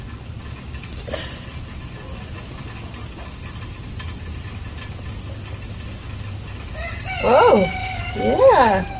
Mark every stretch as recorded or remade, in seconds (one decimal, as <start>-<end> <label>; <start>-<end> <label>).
0.0-9.0 recorded